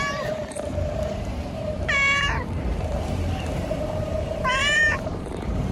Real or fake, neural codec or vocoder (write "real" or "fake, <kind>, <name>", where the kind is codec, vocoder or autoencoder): fake, vocoder, BigVGAN v2